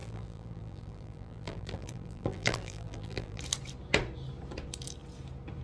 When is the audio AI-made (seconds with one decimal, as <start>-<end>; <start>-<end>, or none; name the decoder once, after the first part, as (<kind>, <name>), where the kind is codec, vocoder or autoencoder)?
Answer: 0.0-3.4 (vocoder, BigVGAN v2)